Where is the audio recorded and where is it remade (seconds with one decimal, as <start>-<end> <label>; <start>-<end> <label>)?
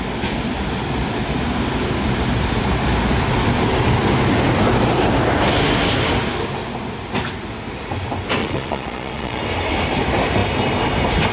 0.0-8.4 recorded; 8.4-9.4 remade; 9.4-11.3 recorded